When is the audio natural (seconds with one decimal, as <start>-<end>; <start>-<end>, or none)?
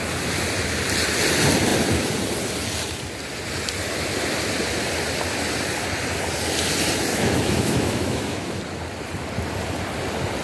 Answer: 0.0-7.1; 8.6-10.4